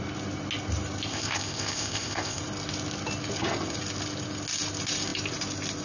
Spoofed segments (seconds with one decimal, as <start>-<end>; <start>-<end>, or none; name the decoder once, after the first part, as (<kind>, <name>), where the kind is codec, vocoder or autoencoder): 1.1-2.4 (codec, ZipCodec)